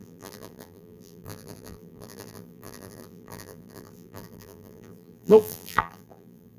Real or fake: fake